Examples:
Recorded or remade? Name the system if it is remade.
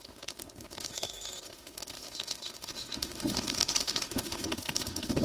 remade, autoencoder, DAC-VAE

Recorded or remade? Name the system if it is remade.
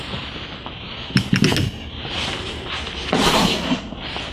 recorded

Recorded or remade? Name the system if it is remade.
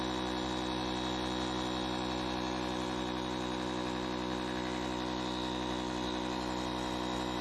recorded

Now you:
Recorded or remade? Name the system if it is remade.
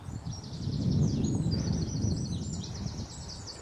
recorded